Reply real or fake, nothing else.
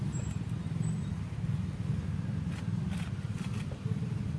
real